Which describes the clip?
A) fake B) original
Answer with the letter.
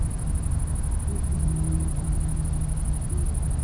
B